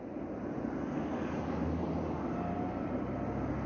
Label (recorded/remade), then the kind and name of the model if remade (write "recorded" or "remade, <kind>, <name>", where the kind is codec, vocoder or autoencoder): recorded